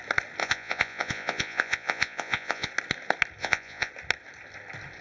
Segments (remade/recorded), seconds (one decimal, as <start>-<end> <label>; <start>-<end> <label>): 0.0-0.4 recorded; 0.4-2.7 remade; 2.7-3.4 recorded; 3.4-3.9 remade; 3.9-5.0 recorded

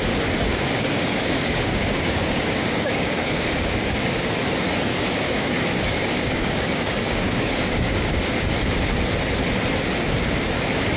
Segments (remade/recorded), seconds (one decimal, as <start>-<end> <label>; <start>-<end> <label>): 0.0-0.5 recorded; 0.5-4.4 remade; 4.4-4.9 recorded; 4.9-8.5 remade; 8.5-11.0 recorded

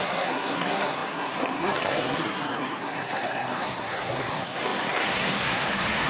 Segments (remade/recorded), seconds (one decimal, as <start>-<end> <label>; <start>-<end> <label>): 0.0-6.1 remade